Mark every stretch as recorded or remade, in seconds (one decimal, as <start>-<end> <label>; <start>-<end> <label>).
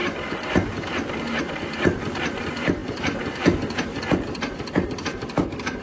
0.0-1.2 remade; 1.2-5.8 recorded